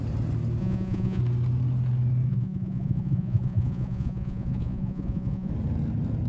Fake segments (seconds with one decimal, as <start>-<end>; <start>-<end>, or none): 0.6-1.2; 2.3-5.5